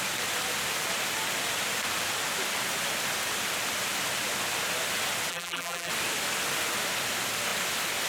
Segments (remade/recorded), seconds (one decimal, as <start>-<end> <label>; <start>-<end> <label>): 0.0-5.3 recorded; 5.3-5.9 remade; 5.9-8.1 recorded